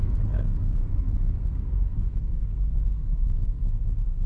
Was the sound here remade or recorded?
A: remade